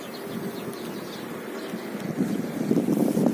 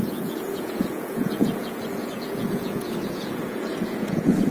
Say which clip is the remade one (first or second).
second